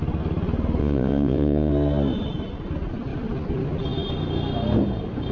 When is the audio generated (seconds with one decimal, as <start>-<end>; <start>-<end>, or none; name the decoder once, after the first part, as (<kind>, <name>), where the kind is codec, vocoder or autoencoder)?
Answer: 0.8-1.7 (vocoder, Vocos)